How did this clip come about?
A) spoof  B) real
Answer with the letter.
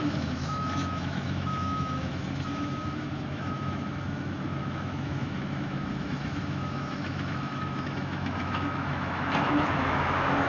A